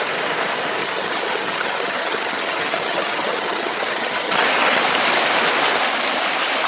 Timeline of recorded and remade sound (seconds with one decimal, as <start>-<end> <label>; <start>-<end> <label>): 0.0-0.8 recorded; 0.8-4.8 remade; 4.8-6.7 recorded